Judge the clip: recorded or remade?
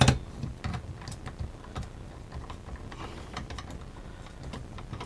recorded